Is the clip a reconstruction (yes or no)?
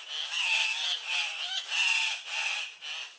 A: no